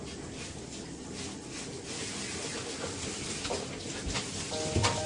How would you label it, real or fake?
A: real